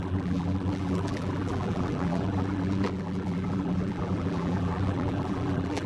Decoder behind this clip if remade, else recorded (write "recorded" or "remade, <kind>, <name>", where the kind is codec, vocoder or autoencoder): remade, vocoder, BigVGAN v2